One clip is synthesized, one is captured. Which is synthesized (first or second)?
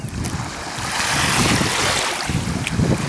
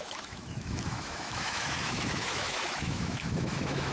second